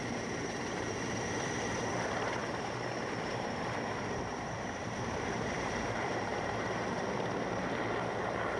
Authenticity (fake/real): fake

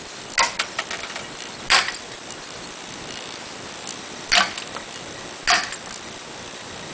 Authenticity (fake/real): real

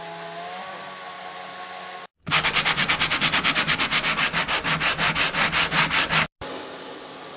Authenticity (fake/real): real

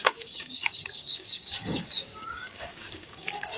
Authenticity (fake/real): fake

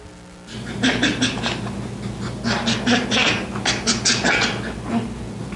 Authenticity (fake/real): real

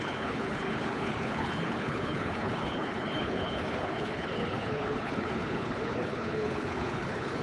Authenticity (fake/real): fake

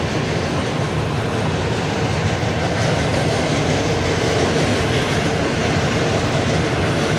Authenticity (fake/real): real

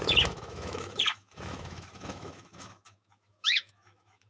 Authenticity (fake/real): fake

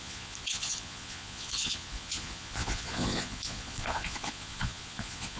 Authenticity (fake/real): fake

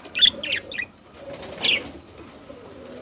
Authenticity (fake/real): real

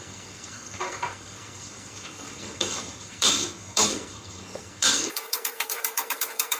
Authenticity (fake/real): fake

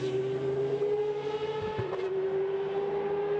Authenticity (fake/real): real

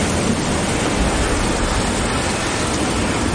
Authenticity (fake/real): real